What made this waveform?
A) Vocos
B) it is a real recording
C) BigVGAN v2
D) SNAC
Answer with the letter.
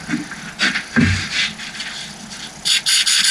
B